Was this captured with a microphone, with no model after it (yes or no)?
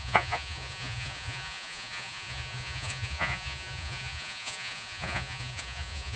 no